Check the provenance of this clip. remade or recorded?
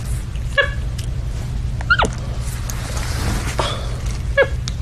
recorded